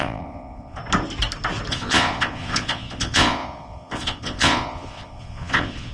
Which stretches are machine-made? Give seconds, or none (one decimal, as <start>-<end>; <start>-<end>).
0.0-0.8; 1.7-5.9